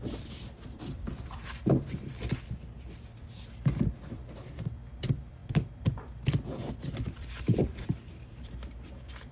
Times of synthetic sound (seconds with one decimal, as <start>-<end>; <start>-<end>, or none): 0.0-9.3

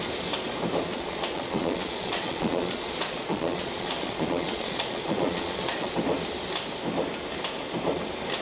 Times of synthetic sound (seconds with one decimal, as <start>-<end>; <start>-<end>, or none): 0.9-5.9